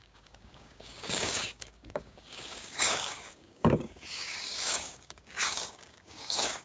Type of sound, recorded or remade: remade